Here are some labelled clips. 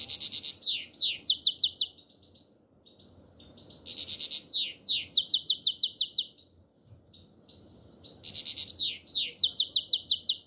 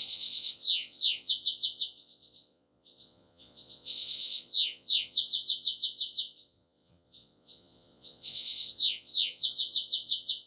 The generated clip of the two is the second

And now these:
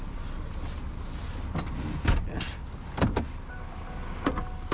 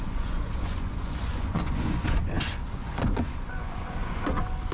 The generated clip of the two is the second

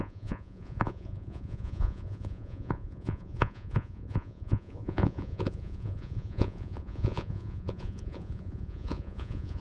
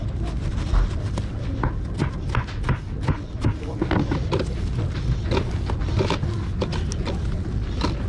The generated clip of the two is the first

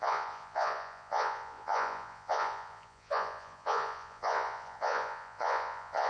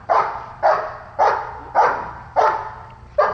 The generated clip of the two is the first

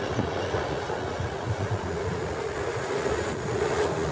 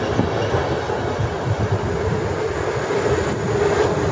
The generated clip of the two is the first